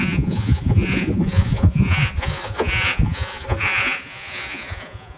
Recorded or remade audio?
remade